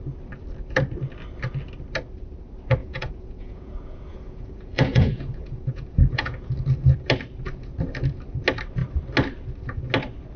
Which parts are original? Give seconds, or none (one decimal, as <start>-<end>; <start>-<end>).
0.0-2.8; 6.5-10.4

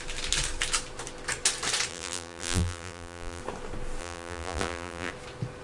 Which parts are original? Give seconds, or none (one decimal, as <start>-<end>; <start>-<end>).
0.0-1.9; 3.4-4.0; 5.1-5.6

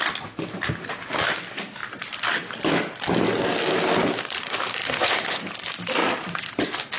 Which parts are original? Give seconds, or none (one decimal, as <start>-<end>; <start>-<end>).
0.0-4.8; 5.4-6.0; 6.5-7.0

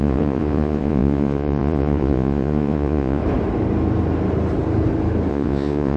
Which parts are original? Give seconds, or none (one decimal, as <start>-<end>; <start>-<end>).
3.2-5.3